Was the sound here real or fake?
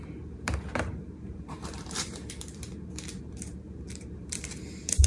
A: fake